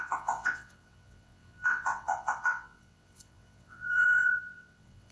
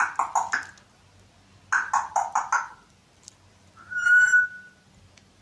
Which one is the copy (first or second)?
first